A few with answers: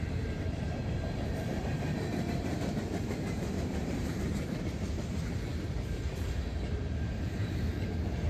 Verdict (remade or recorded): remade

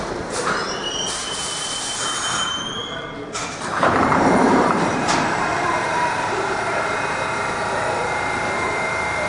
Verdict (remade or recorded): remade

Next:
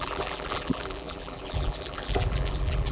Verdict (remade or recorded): remade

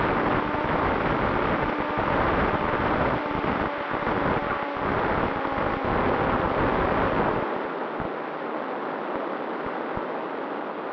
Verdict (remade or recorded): recorded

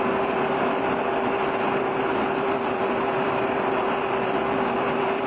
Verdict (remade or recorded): remade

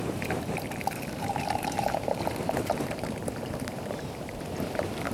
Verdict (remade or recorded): remade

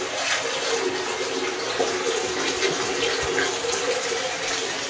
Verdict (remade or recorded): recorded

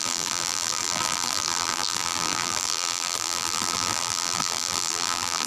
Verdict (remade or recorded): remade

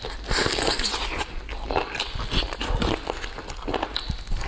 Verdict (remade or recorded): recorded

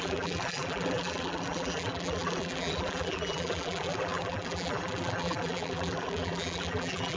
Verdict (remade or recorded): remade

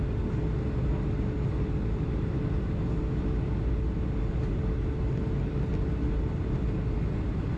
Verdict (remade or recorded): recorded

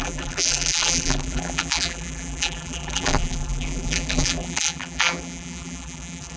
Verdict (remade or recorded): remade